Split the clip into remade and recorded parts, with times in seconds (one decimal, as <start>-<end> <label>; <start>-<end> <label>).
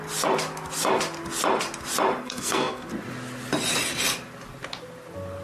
0.0-2.2 recorded; 2.2-2.9 remade; 2.9-5.4 recorded